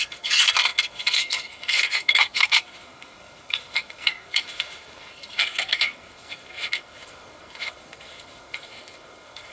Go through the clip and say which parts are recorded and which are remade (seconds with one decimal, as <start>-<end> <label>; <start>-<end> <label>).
0.0-9.5 remade